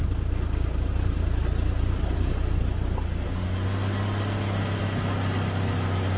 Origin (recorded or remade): recorded